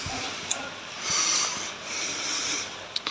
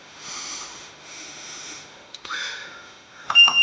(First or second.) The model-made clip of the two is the second